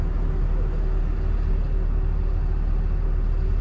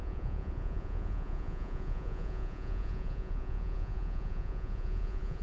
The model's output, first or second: second